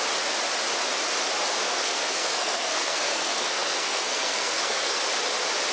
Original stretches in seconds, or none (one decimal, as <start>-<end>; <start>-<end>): 0.0-1.6; 5.0-5.7